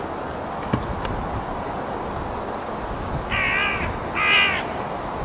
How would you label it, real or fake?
real